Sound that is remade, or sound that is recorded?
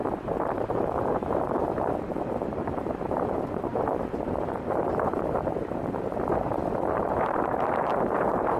remade